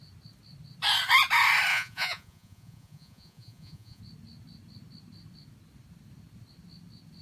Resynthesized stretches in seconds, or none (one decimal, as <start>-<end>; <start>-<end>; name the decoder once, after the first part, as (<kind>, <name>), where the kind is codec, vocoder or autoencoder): 1.7-4.0 (vocoder, Vocos)